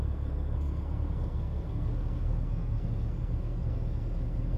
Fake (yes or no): yes